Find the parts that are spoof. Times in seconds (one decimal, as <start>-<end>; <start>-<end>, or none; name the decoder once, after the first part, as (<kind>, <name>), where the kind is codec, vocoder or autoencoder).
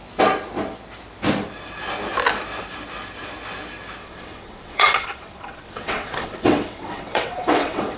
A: 4.0-8.0 (vocoder, WaveNeXt)